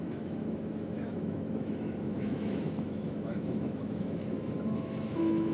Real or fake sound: fake